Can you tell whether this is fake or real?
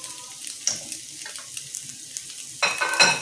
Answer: real